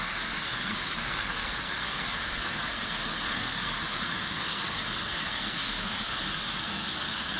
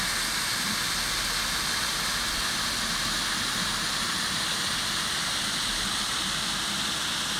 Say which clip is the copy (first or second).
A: first